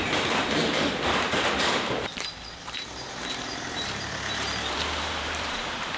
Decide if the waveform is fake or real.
fake